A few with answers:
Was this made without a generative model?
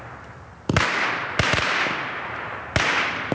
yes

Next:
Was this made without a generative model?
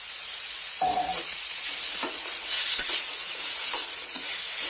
no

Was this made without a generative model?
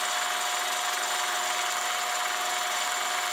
yes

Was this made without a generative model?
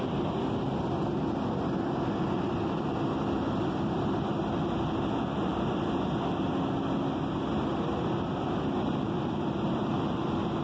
yes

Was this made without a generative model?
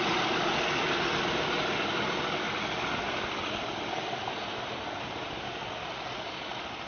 yes